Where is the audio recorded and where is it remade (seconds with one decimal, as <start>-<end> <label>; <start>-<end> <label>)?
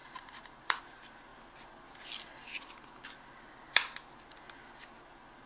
0.0-0.8 remade; 0.8-5.5 recorded